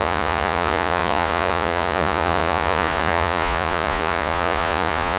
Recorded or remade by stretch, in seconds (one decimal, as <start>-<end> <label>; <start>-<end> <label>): 0.0-5.2 remade